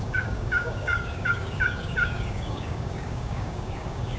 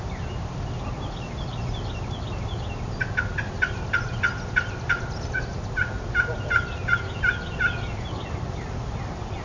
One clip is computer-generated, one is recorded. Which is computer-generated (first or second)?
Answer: first